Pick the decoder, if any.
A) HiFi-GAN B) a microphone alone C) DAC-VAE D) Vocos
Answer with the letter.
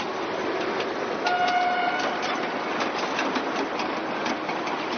B